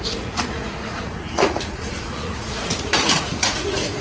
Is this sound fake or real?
fake